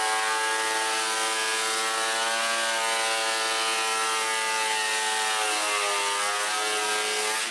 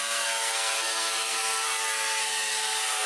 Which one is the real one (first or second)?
first